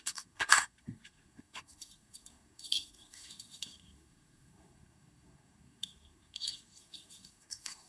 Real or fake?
fake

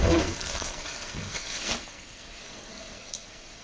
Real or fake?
fake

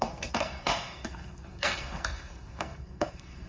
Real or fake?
fake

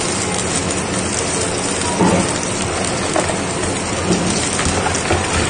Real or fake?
real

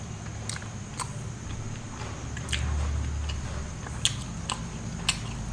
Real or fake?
real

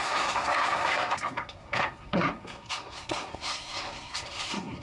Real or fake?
fake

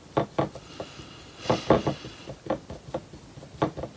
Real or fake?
real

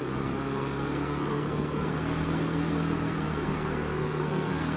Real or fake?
fake